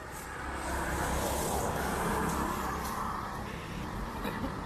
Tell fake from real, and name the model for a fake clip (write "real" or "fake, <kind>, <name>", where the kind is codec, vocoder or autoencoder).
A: real